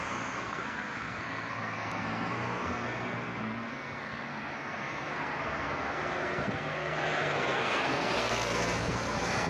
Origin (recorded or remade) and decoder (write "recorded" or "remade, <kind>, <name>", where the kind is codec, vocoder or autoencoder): remade, codec, SNAC